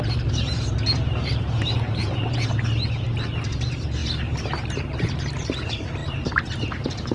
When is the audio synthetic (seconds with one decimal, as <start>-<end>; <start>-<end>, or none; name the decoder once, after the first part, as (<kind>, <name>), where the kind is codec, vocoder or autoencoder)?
0.0-7.1 (vocoder, BigVGAN v2)